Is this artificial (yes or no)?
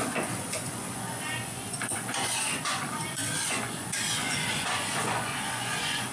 yes